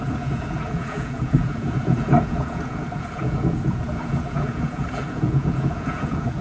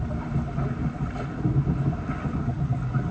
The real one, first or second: second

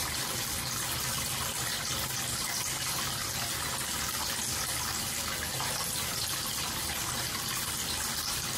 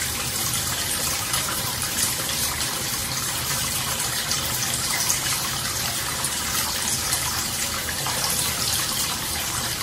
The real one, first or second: first